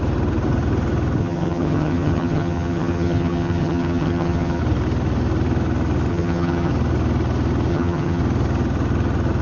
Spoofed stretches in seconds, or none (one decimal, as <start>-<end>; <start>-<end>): 1.2-4.6; 6.1-6.7; 7.7-8.2

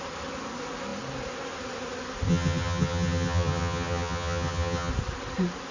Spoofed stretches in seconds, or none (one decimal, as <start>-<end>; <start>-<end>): 2.3-4.9

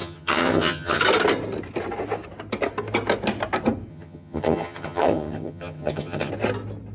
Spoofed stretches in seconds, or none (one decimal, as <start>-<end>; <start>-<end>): 0.0-1.0; 3.9-6.3

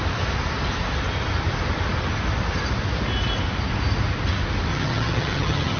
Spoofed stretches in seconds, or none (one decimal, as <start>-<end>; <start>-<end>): 4.7-5.8

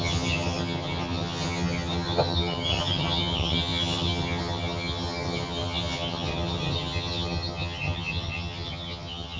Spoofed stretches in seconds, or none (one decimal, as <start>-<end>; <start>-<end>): 0.0-9.4